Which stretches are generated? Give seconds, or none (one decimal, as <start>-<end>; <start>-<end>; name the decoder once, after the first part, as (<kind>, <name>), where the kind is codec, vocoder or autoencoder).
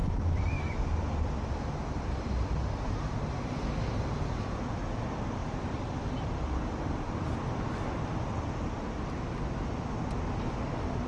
0.0-2.9 (vocoder, BigVGAN v2); 5.4-7.8